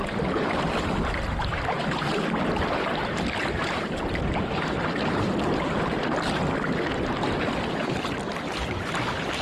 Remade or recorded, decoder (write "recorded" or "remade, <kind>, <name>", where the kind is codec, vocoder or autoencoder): recorded